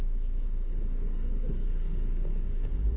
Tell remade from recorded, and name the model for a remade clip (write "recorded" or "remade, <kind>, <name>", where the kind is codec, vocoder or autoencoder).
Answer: remade, codec, DAC